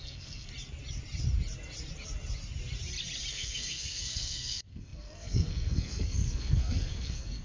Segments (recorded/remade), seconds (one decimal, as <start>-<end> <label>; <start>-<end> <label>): 0.0-0.5 remade; 0.5-3.3 recorded; 3.3-7.4 remade